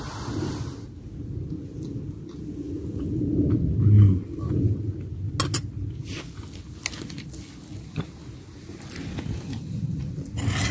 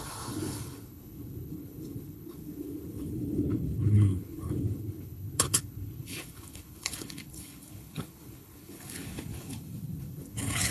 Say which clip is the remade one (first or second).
second